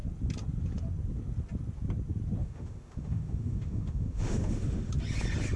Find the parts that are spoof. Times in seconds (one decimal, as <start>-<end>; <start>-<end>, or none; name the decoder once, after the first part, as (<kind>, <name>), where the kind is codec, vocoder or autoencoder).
2.4-4.9 (autoencoder, DAC-VAE)